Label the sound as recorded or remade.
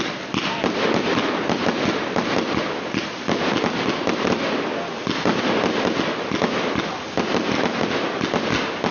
recorded